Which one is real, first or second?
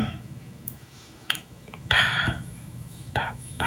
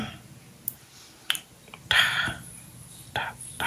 second